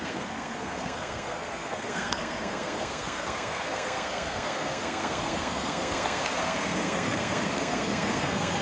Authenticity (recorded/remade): remade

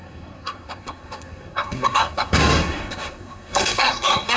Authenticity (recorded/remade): remade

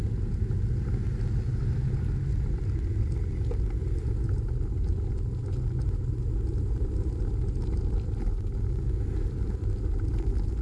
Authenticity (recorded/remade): recorded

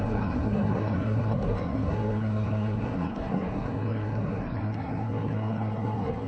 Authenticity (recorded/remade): remade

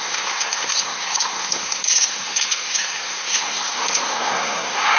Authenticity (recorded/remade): remade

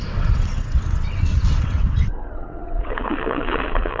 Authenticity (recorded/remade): remade